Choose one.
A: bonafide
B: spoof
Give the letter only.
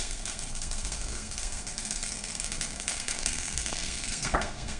B